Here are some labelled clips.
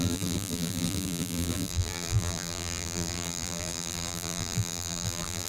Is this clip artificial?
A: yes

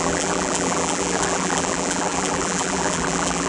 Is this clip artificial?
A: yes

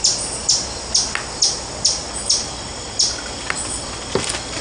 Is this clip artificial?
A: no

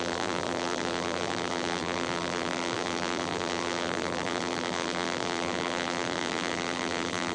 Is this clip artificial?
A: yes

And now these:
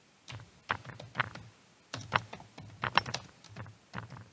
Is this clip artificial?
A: no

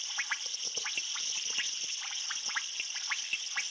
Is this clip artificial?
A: yes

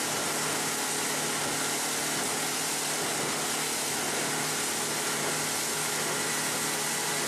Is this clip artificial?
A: no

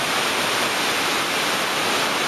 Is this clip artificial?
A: no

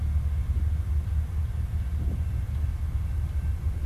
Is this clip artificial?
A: no